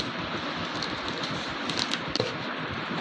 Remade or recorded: recorded